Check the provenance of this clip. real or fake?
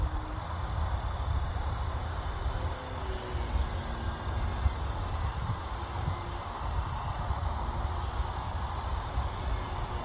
real